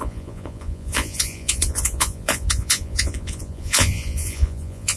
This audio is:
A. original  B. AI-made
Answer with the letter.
B